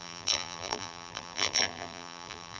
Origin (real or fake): fake